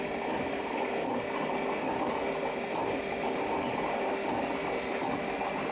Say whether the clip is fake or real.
real